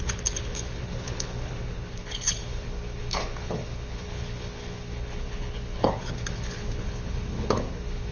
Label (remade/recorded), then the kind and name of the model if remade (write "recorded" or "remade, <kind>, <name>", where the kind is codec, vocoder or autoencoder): remade, codec, HILCodec